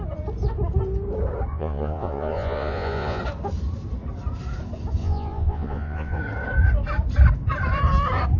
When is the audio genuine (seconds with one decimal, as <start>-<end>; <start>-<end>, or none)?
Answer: 0.0-1.5; 3.2-5.0; 6.2-8.4